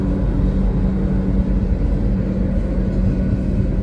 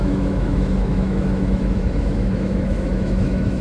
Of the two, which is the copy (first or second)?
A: second